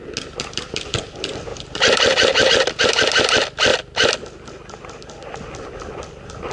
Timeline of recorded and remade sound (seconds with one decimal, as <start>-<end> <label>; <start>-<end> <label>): 0.0-6.5 recorded